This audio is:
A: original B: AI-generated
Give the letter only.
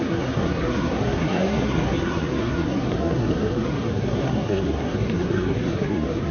B